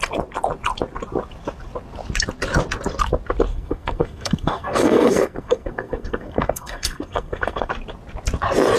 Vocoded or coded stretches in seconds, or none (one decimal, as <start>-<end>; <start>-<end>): 3.5-7.7